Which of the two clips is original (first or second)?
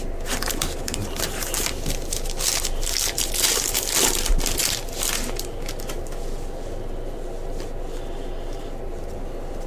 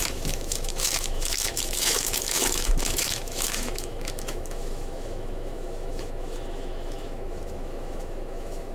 first